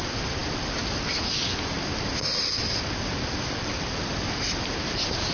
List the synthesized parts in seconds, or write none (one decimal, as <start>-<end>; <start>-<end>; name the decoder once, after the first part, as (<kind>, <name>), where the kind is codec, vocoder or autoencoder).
none